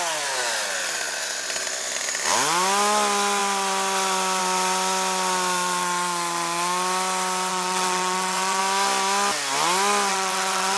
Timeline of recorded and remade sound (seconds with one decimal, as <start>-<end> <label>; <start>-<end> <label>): 0.0-7.5 recorded; 7.5-8.6 remade; 8.6-10.1 recorded; 10.1-10.8 remade